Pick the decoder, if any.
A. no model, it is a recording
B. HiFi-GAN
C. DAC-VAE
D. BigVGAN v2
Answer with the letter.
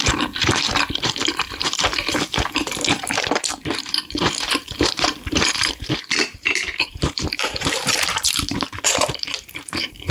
D